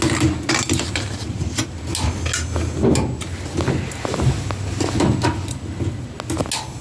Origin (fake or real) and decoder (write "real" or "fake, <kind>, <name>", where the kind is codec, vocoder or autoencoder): real